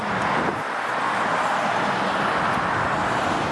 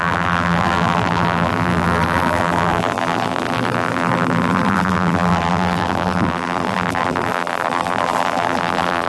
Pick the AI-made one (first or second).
second